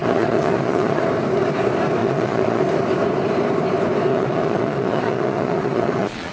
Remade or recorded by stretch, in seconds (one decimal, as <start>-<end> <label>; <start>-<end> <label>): 0.0-1.0 remade; 1.0-2.0 recorded; 2.0-2.6 remade; 2.6-4.1 recorded; 4.1-6.3 remade